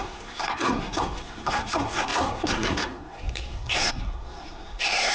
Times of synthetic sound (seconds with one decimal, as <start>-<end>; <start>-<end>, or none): 0.0-5.1